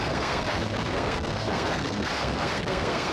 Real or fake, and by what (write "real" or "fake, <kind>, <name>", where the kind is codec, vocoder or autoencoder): fake, codec, SNAC